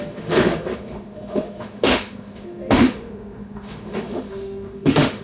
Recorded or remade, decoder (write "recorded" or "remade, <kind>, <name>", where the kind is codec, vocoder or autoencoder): remade, autoencoder, DAC-VAE